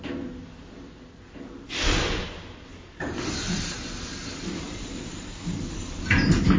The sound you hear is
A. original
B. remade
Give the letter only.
A